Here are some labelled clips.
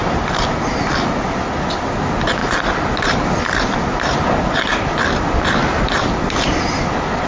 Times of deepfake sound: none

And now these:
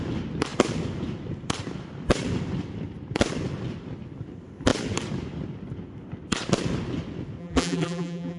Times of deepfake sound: 7.4-8.4

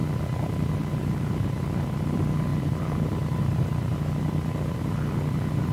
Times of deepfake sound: 0.7-5.7

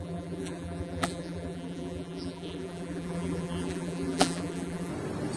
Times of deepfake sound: 0.0-4.9

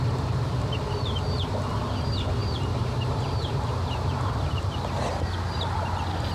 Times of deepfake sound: 2.4-4.5

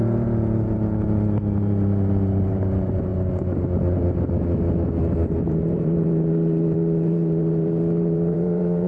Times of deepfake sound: 0.0-3.1; 5.5-8.9

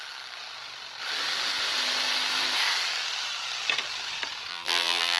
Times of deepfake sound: 4.5-5.2